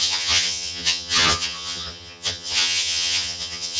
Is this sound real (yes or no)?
no